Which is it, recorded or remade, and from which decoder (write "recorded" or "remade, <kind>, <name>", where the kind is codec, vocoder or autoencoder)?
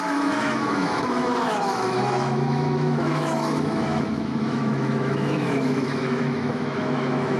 remade, autoencoder, DAC-VAE